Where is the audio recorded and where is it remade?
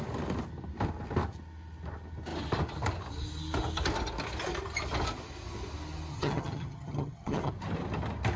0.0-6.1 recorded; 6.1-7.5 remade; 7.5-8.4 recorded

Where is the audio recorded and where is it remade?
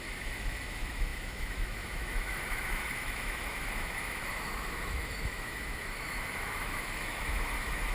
0.0-7.9 remade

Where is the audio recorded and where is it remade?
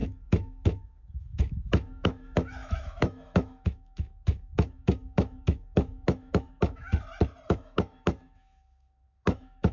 0.0-6.9 remade; 6.9-7.5 recorded; 7.5-9.7 remade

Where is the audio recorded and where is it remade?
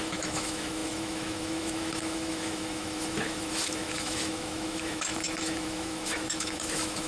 0.0-7.1 remade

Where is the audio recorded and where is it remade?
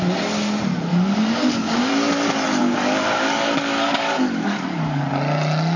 0.0-0.9 recorded; 0.9-1.9 remade; 1.9-2.6 recorded; 2.6-5.1 remade; 5.1-5.8 recorded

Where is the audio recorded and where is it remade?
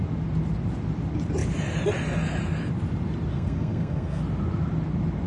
0.0-3.3 recorded; 3.3-4.2 remade; 4.2-5.3 recorded